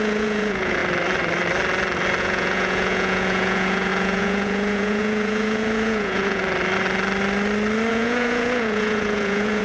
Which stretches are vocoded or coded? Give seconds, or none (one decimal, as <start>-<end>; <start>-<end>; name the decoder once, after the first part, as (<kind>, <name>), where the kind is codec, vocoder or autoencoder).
0.0-0.8 (vocoder, Vocos); 2.2-6.4; 7.9-9.6